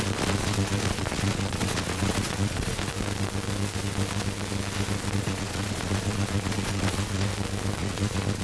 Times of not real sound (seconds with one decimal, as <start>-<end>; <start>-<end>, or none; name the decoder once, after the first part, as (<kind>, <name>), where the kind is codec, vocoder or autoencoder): 0.0-2.9 (vocoder, Vocos); 5.2-7.3; 7.8-8.4